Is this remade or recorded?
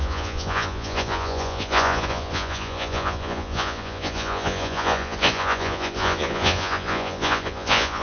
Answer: remade